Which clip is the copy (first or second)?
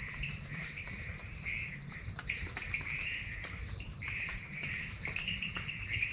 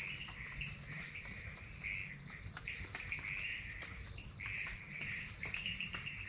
first